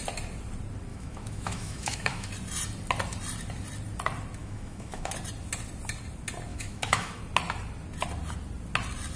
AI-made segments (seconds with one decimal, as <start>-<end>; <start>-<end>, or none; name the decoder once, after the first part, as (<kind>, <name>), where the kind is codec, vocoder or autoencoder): 0.9-2.3 (autoencoder, DAC-VAE); 4.4-5.1; 6.5-7.2